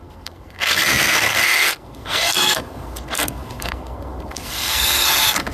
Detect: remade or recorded remade